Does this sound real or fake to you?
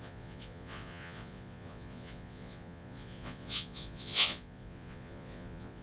fake